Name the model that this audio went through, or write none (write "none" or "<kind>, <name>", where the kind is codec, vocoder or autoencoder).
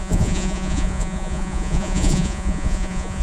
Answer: vocoder, Vocos